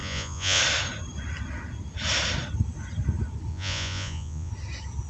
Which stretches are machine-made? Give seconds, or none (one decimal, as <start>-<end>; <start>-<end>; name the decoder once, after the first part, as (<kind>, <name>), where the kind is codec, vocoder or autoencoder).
0.0-0.6 (vocoder, Vocos); 3.5-4.5